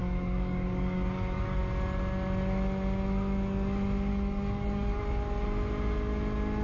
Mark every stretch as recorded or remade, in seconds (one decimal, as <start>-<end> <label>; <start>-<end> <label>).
0.0-1.6 remade; 1.6-4.1 recorded; 4.1-5.0 remade; 5.0-6.6 recorded